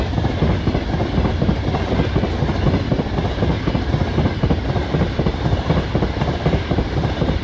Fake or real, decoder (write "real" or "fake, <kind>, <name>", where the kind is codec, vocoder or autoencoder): fake, vocoder, BigVGAN v2